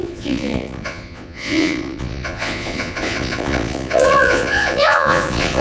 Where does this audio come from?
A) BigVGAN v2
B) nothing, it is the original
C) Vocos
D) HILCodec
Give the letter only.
C